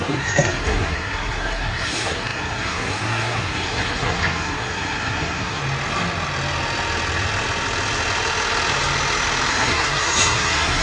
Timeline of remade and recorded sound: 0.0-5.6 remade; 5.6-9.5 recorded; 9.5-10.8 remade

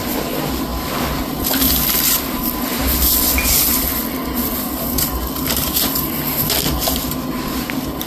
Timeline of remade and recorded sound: 0.0-8.1 recorded

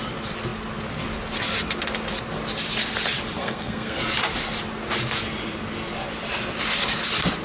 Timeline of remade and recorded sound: 0.0-3.4 recorded; 3.4-4.0 remade; 4.0-7.4 recorded

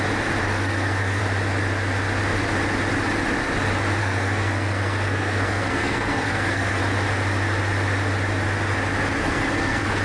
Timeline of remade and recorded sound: 0.0-0.4 recorded; 0.4-1.2 remade; 1.2-4.0 recorded; 4.0-6.8 remade; 6.8-9.2 recorded; 9.2-10.0 remade

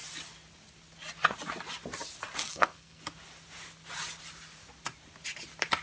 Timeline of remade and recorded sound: 0.0-2.5 recorded; 2.5-3.0 remade; 3.0-5.8 recorded